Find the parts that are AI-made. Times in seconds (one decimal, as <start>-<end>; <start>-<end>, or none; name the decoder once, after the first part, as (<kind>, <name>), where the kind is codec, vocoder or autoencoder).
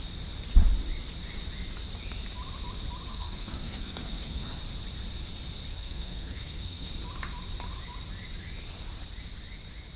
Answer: 3.1-4.6 (codec, SNAC); 5.7-6.9